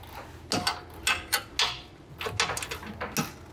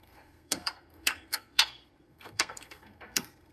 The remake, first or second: second